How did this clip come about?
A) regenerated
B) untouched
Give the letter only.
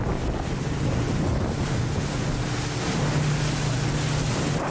B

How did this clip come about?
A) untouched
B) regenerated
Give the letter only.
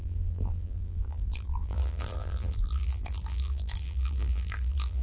B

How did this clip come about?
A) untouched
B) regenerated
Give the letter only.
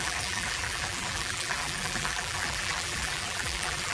B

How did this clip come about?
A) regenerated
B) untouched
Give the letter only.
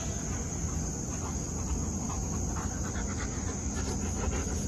B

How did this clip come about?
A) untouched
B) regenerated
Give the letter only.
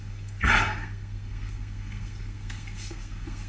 B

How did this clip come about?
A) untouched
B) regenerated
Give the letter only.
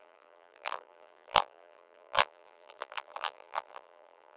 B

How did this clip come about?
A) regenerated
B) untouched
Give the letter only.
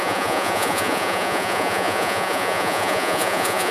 A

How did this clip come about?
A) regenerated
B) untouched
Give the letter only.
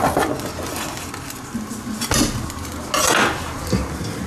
B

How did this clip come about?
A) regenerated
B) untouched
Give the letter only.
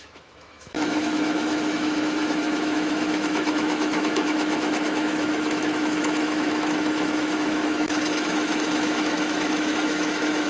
A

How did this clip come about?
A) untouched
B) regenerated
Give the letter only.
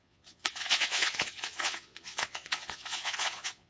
B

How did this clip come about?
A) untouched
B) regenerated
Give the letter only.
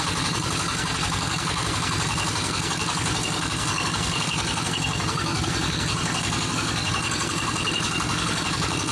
B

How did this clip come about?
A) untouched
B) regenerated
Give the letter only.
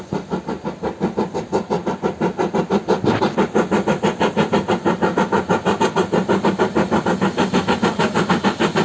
A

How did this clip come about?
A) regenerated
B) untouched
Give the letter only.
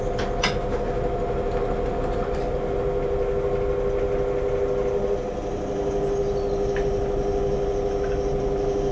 B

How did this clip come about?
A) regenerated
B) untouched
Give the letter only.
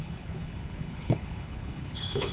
A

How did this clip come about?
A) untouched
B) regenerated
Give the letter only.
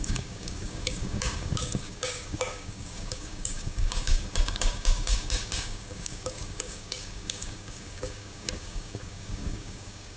B